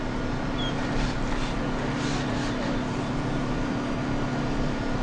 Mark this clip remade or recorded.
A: recorded